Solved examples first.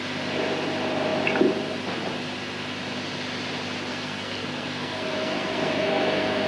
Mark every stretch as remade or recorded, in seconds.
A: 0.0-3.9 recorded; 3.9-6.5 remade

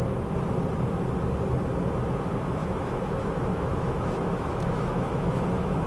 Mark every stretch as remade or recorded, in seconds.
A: 0.0-2.6 recorded; 2.6-5.9 remade

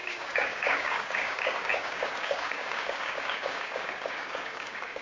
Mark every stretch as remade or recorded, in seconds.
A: 0.0-5.0 remade

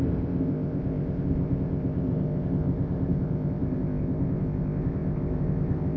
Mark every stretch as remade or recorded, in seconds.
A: 0.0-6.0 remade

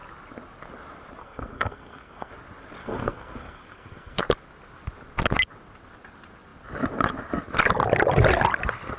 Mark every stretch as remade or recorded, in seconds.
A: 0.0-1.2 recorded; 1.2-2.3 remade; 2.3-2.8 recorded; 2.8-4.2 remade; 4.2-9.0 recorded